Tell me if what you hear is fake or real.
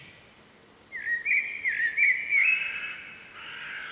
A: real